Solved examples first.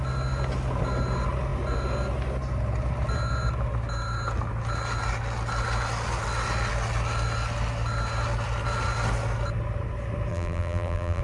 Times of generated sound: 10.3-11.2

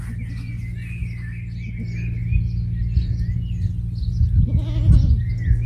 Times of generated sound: none

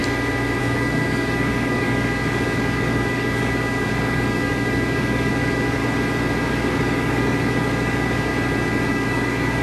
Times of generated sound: 0.6-5.8; 6.5-8.3; 8.9-9.6

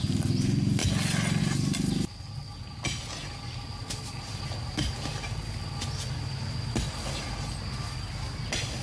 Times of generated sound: none

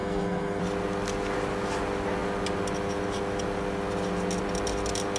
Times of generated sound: 0.0-0.6

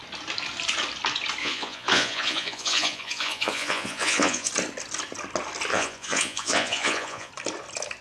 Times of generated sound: 1.4-4.5; 5.7-7.3

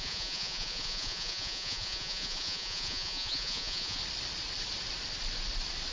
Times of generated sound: 0.0-4.0